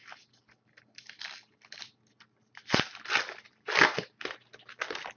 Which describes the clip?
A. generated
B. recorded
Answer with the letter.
B